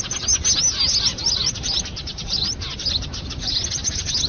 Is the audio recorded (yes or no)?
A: yes